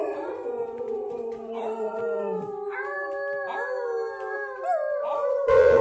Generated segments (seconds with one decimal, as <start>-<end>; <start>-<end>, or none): 0.0-2.0; 5.0-5.8